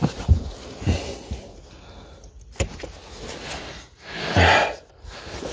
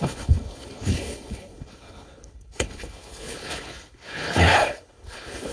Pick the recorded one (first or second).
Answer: first